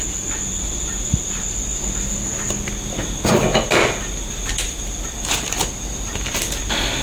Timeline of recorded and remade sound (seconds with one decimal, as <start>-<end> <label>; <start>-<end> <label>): 0.0-7.0 recorded